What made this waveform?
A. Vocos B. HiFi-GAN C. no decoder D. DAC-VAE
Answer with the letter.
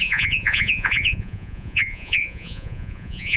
A